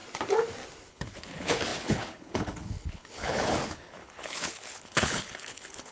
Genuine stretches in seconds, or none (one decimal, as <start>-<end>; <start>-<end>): 0.0-0.9